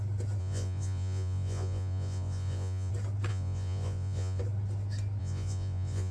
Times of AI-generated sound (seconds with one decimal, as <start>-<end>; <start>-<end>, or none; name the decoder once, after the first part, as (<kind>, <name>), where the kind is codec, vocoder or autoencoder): 0.4-2.9 (vocoder, Vocos); 3.3-4.4; 5.2-6.1